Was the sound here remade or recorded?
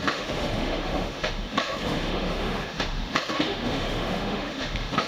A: remade